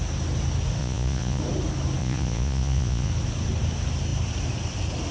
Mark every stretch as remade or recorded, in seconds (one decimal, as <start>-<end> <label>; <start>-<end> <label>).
0.0-0.8 recorded; 0.8-1.4 remade; 1.4-2.0 recorded; 2.0-3.1 remade; 3.1-5.1 recorded